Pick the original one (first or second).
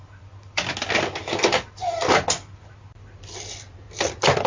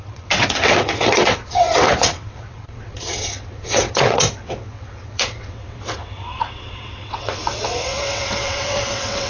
first